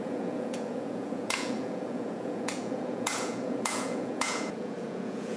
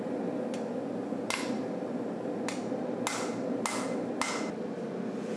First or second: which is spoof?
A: first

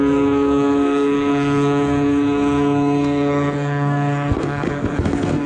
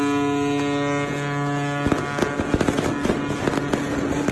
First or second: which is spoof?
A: first